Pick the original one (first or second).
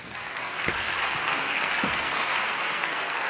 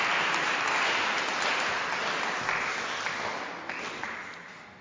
second